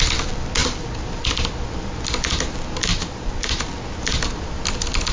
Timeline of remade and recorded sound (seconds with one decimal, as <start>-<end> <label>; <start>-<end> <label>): 0.0-0.6 recorded; 0.6-1.5 remade; 1.5-2.9 recorded; 2.9-3.7 remade; 3.7-5.1 recorded